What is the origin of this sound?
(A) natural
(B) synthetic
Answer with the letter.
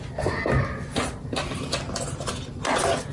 A